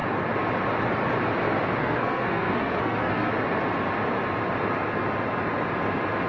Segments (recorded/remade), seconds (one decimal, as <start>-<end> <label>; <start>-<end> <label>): 0.0-1.8 recorded; 1.8-3.3 remade; 3.3-6.3 recorded